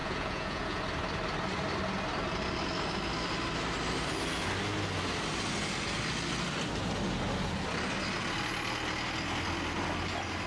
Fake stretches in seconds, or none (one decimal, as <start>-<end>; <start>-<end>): 0.0-0.8

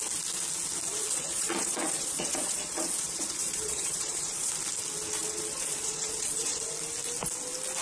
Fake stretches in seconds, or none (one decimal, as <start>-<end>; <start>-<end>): 1.1-4.5; 5.2-6.6

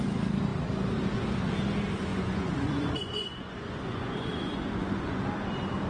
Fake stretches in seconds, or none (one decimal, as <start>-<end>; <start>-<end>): 2.1-5.2

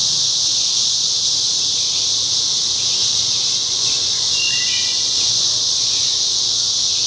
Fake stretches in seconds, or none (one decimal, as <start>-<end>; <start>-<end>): 0.0-1.1; 3.0-6.5

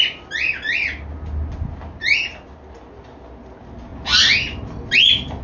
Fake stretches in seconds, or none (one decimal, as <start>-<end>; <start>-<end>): none